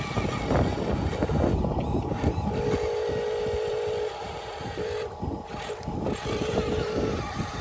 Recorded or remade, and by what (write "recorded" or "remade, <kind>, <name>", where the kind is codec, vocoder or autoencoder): recorded